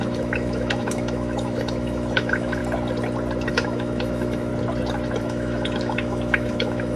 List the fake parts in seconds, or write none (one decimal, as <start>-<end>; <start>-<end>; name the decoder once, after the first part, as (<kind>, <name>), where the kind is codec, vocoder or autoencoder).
0.0-2.6 (autoencoder, DAC-VAE); 3.5-4.5; 5.2-7.0